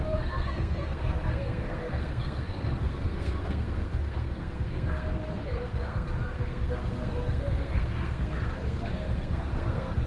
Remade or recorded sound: remade